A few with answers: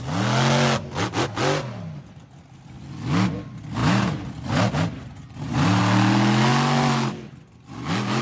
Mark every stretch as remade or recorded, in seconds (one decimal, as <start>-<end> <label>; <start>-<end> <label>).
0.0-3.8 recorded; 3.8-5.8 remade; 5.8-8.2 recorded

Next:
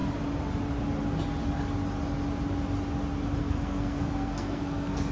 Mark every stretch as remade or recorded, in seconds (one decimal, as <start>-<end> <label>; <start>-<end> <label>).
0.0-3.4 recorded; 3.4-5.1 remade

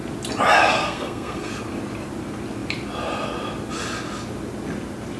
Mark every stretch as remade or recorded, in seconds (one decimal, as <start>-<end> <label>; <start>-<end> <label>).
0.0-0.8 recorded; 0.8-1.5 remade; 1.5-5.2 recorded

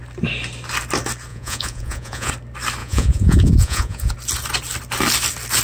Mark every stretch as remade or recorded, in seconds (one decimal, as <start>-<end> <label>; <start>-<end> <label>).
0.0-1.3 recorded; 1.3-2.3 remade; 2.3-2.8 recorded; 2.8-4.1 remade; 4.1-5.6 recorded

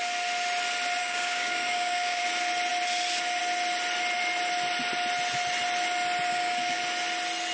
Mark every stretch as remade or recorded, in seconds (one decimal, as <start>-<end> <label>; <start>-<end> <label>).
0.0-1.0 recorded; 1.0-2.2 remade; 2.2-6.3 recorded; 6.3-6.8 remade; 6.8-7.5 recorded